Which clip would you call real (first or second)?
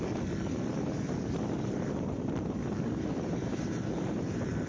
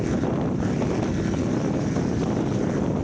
second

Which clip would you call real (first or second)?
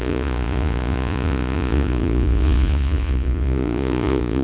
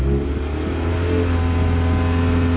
second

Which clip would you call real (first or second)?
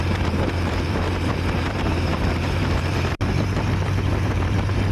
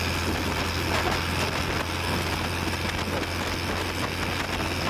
second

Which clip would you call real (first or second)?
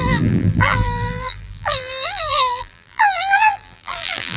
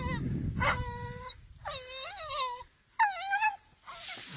second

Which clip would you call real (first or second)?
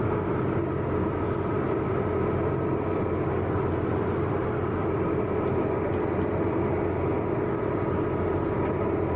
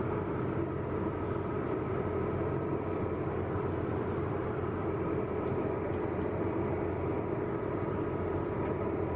first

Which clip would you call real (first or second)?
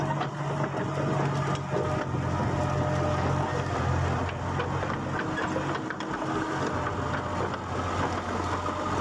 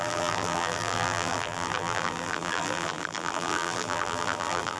first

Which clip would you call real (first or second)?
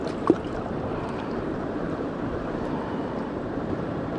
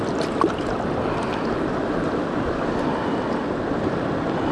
second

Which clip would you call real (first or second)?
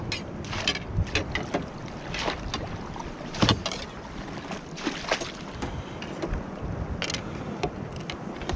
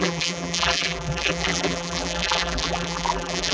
first